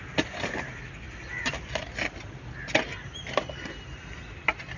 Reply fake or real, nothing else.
real